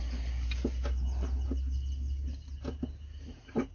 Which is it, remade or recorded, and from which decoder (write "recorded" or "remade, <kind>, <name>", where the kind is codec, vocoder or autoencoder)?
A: recorded